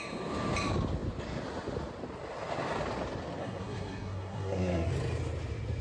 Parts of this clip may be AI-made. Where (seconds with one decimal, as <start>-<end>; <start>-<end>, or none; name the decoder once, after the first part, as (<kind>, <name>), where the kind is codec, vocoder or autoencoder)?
3.4-4.9 (codec, SNAC)